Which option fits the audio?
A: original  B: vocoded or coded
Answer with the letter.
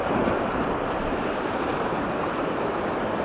B